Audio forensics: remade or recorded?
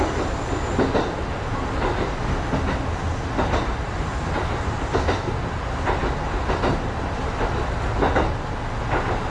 recorded